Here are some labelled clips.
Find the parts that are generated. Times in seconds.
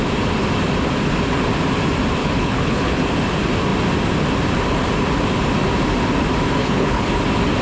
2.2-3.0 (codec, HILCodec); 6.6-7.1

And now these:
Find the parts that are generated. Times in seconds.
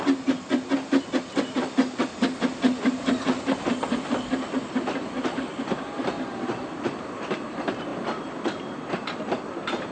none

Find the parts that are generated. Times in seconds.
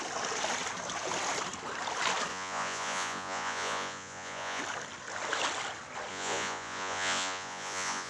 2.3-4.6 (vocoder, Vocos); 6.1-8.1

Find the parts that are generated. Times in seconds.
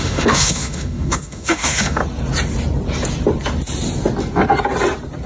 0.0-2.0 (autoencoder, DAC-VAE)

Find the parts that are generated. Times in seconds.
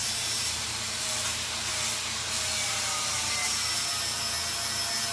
0.0-1.7 (vocoder, BigVGAN v2); 2.3-3.7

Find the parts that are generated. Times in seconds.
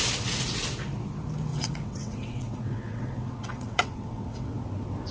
1.5-4.6 (vocoder, WaveNeXt)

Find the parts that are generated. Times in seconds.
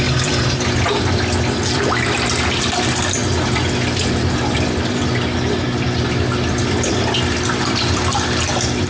0.0-3.2 (vocoder, BigVGAN v2); 6.6-8.9